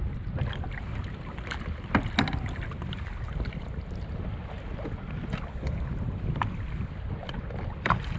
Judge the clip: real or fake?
real